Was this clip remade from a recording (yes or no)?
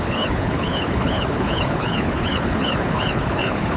yes